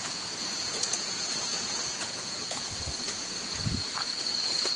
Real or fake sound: fake